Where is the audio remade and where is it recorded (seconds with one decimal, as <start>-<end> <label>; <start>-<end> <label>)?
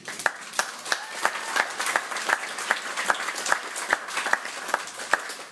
0.0-5.5 recorded